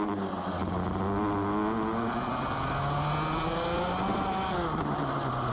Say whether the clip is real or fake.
real